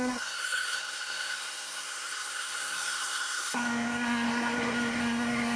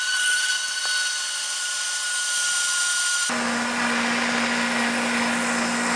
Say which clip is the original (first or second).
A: second